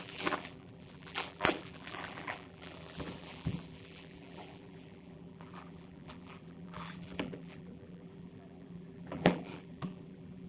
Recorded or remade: remade